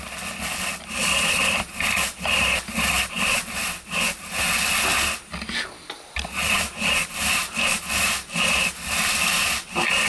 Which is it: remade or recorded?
recorded